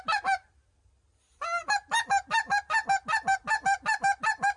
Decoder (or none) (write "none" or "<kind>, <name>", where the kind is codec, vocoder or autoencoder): none